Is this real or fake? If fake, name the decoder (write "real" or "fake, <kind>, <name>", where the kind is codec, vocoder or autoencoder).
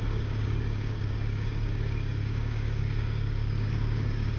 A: fake, codec, DAC